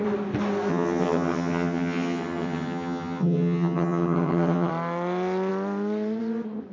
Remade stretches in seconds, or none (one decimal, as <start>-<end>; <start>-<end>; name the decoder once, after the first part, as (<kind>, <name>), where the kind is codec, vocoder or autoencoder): 0.7-4.7 (vocoder, HiFi-GAN)